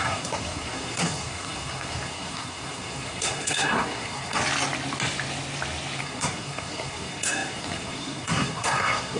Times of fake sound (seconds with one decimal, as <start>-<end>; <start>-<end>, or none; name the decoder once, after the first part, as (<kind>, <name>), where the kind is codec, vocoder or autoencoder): 0.0-4.4 (codec, SNAC); 6.0-9.2